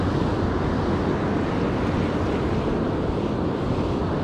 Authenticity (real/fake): real